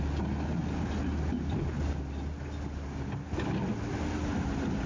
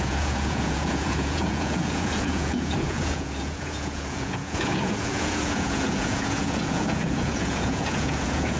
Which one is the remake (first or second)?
second